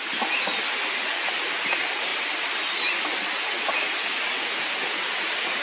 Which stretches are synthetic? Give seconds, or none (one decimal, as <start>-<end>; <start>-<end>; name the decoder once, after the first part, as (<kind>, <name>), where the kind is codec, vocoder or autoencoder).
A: none